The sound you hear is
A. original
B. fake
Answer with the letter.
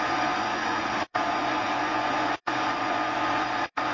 B